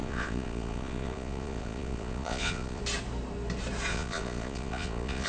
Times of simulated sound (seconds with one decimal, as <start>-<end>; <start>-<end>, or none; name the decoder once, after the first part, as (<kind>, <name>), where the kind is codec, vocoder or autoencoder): 0.0-2.8 (vocoder, Vocos); 3.9-5.3